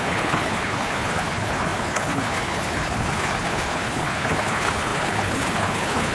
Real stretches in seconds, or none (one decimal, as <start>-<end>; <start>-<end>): none